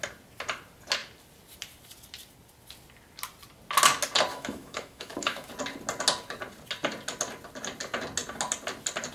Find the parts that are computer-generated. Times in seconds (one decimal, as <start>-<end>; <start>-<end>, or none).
4.3-5.5